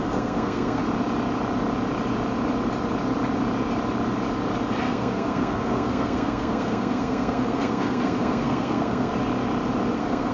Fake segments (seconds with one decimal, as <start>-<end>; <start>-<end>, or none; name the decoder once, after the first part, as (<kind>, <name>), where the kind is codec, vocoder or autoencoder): 0.0-0.8 (codec, SNAC); 4.8-9.1; 9.9-10.3